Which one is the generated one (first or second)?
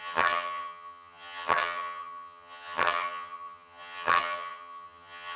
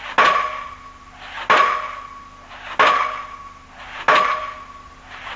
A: first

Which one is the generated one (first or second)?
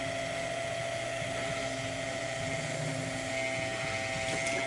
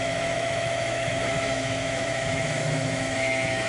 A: second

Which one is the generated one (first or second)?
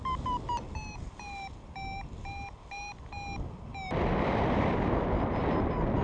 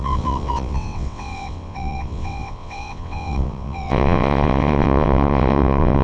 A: second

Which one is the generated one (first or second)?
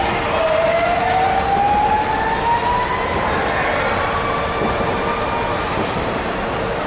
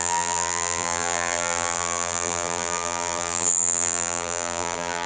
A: second